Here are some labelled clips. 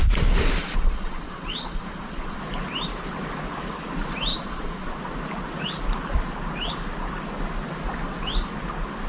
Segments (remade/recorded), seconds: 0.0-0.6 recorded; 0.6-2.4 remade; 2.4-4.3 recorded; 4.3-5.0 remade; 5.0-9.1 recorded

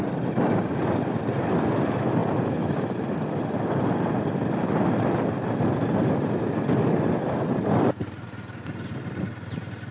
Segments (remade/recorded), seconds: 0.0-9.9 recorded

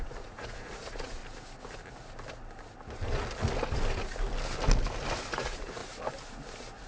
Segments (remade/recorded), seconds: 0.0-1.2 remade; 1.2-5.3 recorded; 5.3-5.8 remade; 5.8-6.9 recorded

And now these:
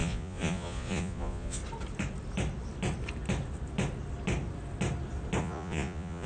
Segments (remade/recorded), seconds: 0.0-1.6 remade; 1.6-5.4 recorded; 5.4-6.3 remade

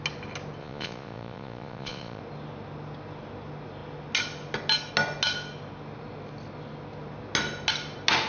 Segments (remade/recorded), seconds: 0.0-0.6 recorded; 0.6-2.2 remade; 2.2-8.3 recorded

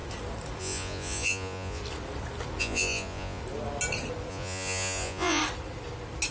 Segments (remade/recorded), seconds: 0.0-0.6 recorded; 0.6-1.8 remade; 1.8-2.6 recorded; 2.6-3.4 remade; 3.4-4.3 recorded; 4.3-5.4 remade; 5.4-6.3 recorded

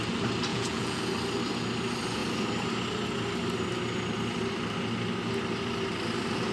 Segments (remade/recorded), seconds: 0.0-0.5 recorded; 0.5-1.0 remade; 1.0-6.5 recorded

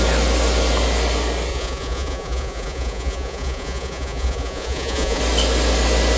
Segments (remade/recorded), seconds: 0.0-1.5 recorded; 1.5-5.2 remade; 5.2-6.2 recorded